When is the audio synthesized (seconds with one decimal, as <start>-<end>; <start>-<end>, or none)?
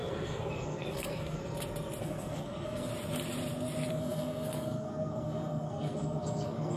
0.0-1.4; 2.0-2.9; 3.9-6.8